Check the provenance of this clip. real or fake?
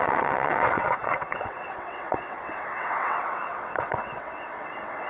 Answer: fake